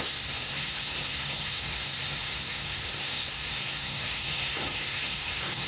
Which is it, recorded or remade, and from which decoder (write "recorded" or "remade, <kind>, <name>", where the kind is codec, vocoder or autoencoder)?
remade, codec, SNAC